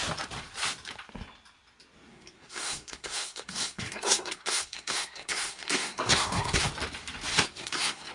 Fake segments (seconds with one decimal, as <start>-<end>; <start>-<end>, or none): 2.1-6.6; 7.3-8.1